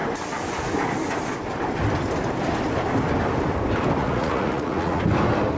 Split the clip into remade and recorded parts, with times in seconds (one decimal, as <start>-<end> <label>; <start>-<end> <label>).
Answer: 0.0-4.0 recorded; 4.0-5.0 remade; 5.0-5.6 recorded